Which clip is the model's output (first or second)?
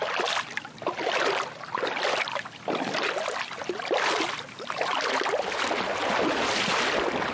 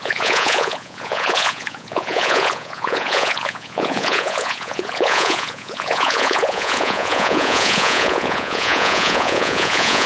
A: second